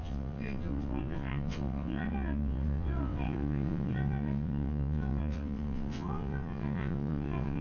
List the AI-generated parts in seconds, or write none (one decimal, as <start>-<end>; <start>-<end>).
0.0-7.6